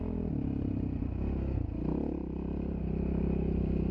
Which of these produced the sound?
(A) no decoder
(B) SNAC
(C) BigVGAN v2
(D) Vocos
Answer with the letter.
A